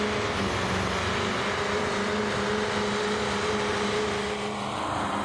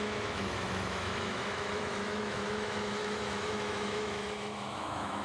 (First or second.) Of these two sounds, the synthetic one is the second